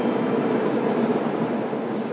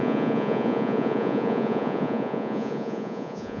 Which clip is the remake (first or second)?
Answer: second